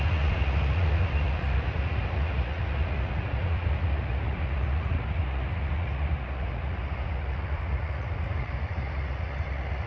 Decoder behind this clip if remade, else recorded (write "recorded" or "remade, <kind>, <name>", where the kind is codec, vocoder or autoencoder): remade, vocoder, Vocos